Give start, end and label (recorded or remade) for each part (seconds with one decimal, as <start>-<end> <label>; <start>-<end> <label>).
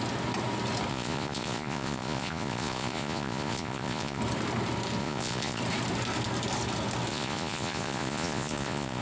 0.0-0.9 recorded; 0.9-4.2 remade; 4.2-5.0 recorded; 5.0-5.6 remade; 5.6-7.1 recorded; 7.1-9.0 remade